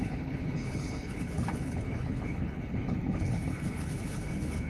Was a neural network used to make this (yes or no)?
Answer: yes